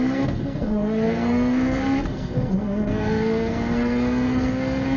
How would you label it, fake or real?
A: fake